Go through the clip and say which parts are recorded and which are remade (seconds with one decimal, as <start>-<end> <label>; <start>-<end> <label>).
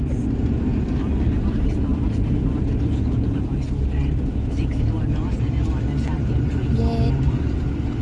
0.0-8.0 recorded